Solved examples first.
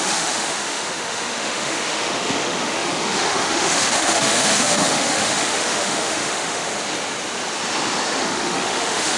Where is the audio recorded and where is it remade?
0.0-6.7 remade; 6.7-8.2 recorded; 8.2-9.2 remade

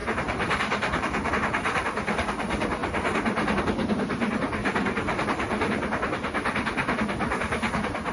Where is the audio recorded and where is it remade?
0.0-1.3 remade; 1.3-4.6 recorded; 4.6-5.9 remade; 5.9-8.1 recorded

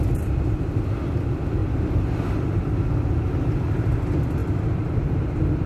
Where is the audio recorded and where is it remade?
0.0-5.7 recorded

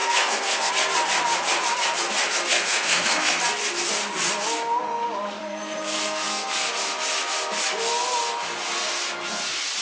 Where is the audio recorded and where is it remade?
0.0-0.7 remade; 0.7-2.5 recorded; 2.5-3.4 remade; 3.4-5.4 recorded; 5.4-6.7 remade; 6.7-9.8 recorded

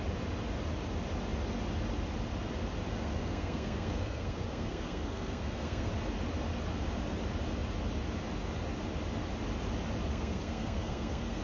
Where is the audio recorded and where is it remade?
0.0-2.9 recorded; 2.9-5.9 remade; 5.9-10.1 recorded; 10.1-11.4 remade

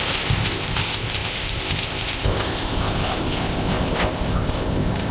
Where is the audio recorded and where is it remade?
0.0-5.1 remade

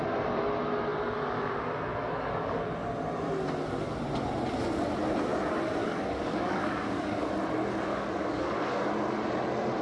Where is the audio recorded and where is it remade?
0.0-1.9 recorded; 1.9-2.6 remade; 2.6-5.8 recorded; 5.8-7.3 remade; 7.3-7.9 recorded; 7.9-8.9 remade; 8.9-9.8 recorded

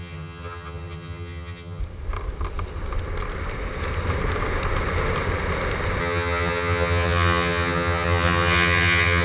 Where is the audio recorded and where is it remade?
0.0-1.8 remade; 1.8-6.0 recorded; 6.0-9.2 remade